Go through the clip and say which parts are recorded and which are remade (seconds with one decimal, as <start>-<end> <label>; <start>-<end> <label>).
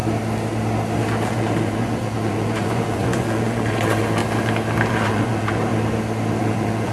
0.0-1.3 recorded; 1.3-4.2 remade; 4.2-4.9 recorded; 4.9-5.7 remade; 5.7-6.4 recorded; 6.4-6.9 remade